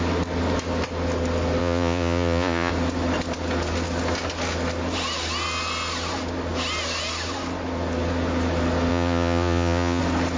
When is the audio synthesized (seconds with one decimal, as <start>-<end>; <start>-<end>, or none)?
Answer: 1.6-2.7; 8.9-10.0